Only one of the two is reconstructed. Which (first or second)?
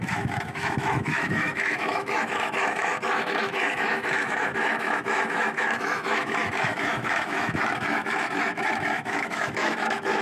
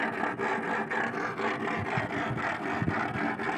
first